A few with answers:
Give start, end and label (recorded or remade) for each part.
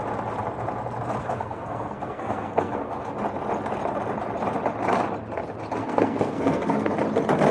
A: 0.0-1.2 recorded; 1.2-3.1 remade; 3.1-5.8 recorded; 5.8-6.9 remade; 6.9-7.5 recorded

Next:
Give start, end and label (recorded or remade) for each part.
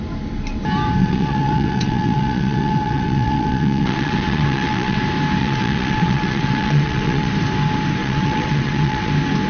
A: 0.0-1.0 recorded; 1.0-5.0 remade; 5.0-5.4 recorded; 5.4-7.3 remade; 7.3-8.0 recorded; 8.0-9.1 remade; 9.1-9.5 recorded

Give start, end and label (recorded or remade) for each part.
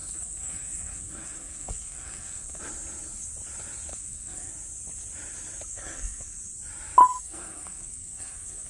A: 0.0-2.6 remade; 2.6-3.9 recorded; 3.9-4.5 remade; 4.5-5.7 recorded; 5.7-6.4 remade; 6.4-7.0 recorded; 7.0-8.7 remade